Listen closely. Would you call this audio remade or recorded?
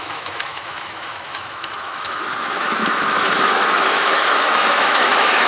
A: remade